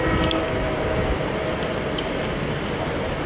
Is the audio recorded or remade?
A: recorded